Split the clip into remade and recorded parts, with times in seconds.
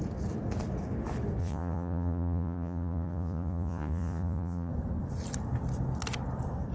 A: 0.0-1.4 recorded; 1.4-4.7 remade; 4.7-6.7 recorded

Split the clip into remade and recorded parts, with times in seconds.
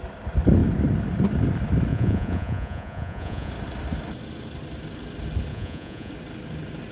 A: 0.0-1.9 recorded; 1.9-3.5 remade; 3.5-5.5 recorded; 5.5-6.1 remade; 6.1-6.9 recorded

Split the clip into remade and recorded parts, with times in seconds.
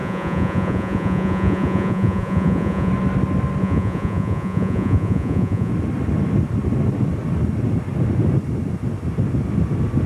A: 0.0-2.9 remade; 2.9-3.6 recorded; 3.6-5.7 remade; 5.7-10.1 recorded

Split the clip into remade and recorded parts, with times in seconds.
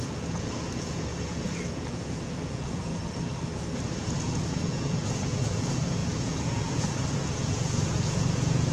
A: 0.0-2.9 remade; 2.9-4.0 recorded; 4.0-8.7 remade